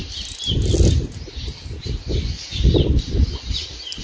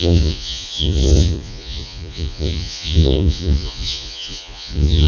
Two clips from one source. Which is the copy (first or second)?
second